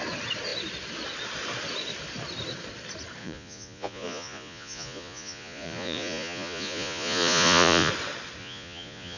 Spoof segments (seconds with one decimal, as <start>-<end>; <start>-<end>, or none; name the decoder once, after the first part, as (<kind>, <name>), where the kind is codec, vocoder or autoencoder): 3.2-7.9 (vocoder, Vocos); 8.4-9.2